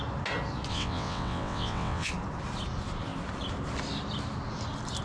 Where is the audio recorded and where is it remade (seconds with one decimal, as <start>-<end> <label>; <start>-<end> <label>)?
0.0-0.7 recorded; 0.7-2.1 remade; 2.1-5.0 recorded